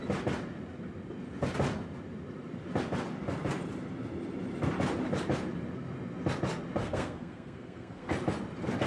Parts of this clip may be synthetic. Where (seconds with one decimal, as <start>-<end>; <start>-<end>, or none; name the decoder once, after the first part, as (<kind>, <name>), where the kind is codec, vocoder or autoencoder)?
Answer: 6.8-8.1 (codec, SNAC)

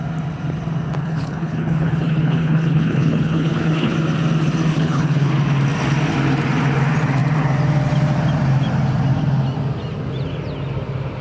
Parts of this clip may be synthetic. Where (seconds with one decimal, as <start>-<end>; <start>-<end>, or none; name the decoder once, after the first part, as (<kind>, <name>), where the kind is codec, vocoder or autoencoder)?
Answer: 1.0-3.9 (codec, HILCodec); 4.7-5.3

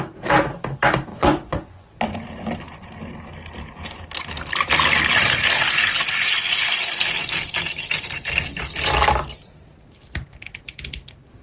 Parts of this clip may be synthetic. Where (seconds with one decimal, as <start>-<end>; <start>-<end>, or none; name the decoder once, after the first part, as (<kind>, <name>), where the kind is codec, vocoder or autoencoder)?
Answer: 1.1-1.9 (vocoder, Vocos)